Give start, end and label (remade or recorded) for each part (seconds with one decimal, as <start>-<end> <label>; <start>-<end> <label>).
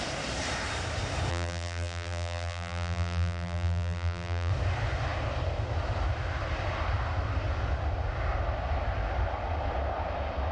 0.0-1.3 recorded; 1.3-4.5 remade; 4.5-10.5 recorded